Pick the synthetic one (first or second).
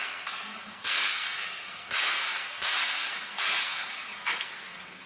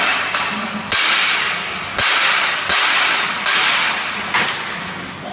first